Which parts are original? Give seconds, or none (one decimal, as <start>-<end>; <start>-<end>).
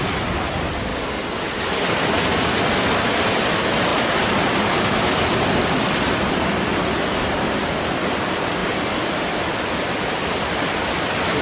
0.0-11.4